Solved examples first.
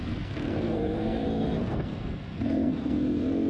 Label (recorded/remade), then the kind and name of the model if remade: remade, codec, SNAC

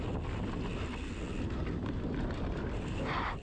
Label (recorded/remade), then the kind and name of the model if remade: recorded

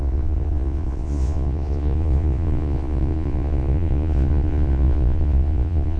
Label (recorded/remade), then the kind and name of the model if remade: remade, vocoder, Vocos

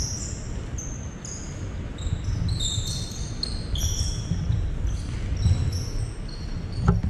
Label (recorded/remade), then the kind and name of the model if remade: recorded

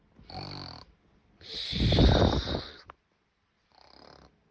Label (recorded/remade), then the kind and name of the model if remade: recorded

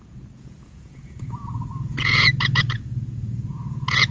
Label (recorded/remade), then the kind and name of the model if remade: remade, vocoder, Vocos